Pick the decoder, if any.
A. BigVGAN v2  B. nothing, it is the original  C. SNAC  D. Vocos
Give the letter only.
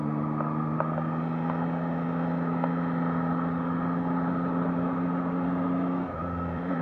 B